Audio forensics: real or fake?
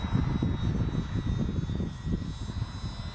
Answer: real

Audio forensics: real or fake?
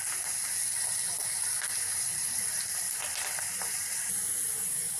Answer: real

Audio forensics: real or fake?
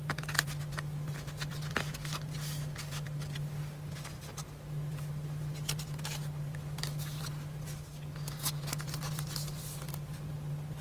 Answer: real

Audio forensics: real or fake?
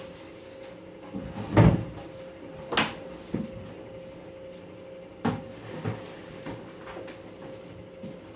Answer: real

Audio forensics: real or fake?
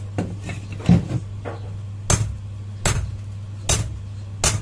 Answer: real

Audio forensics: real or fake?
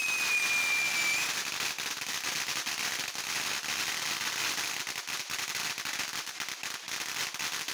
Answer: real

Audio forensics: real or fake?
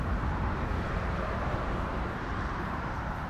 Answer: fake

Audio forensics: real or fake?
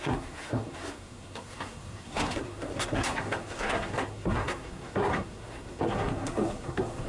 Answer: fake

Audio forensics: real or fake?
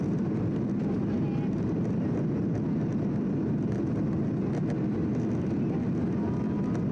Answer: real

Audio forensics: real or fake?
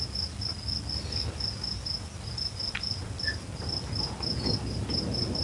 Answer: real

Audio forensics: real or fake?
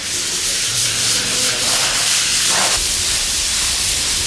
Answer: fake